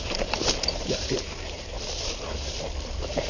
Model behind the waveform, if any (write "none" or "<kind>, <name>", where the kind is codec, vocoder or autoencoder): vocoder, BigVGAN v2